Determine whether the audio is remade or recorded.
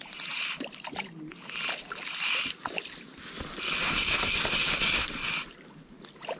recorded